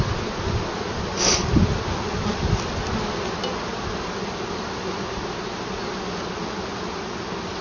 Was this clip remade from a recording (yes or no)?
no